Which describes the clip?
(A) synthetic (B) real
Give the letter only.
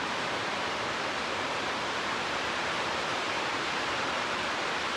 A